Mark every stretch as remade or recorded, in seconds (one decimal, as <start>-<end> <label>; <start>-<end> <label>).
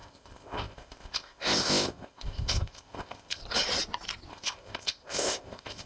0.0-3.4 remade; 3.4-4.3 recorded; 4.3-5.9 remade